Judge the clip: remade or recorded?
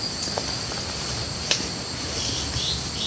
recorded